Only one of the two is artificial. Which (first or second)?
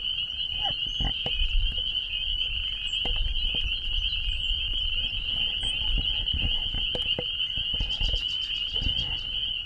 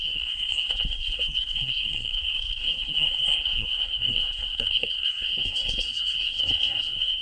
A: second